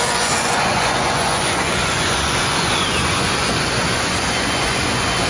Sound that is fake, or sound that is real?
fake